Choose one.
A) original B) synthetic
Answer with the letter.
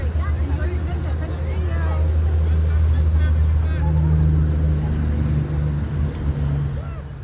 A